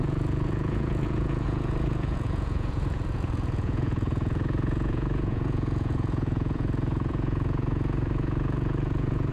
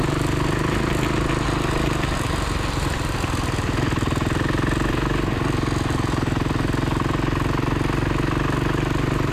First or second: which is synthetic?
first